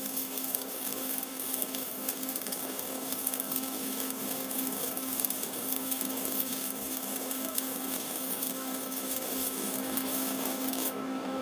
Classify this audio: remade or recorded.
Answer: remade